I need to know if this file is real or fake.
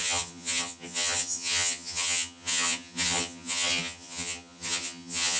fake